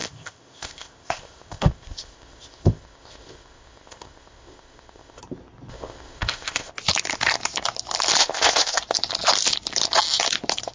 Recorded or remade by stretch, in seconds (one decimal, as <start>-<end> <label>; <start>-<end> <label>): 0.0-5.2 remade; 5.2-5.7 recorded; 5.7-6.7 remade; 6.7-8.2 recorded; 8.2-8.8 remade; 8.8-10.7 recorded